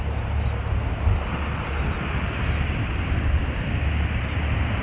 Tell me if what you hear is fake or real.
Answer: real